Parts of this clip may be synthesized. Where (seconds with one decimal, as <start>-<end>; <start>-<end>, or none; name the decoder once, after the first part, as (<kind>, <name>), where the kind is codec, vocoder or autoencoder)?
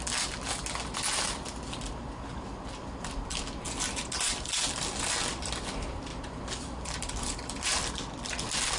none